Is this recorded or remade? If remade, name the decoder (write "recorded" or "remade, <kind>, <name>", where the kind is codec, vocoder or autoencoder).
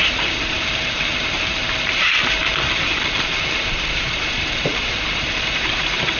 remade, vocoder, BigVGAN v2